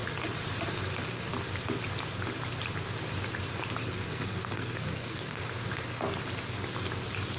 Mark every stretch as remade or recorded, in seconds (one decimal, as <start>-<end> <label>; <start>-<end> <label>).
0.0-3.8 recorded; 3.8-5.4 remade; 5.4-7.4 recorded